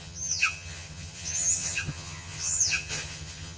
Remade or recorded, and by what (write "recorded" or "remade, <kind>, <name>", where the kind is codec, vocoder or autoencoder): remade, vocoder, HiFi-GAN